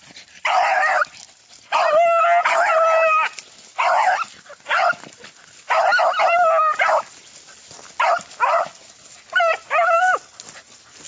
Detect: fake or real real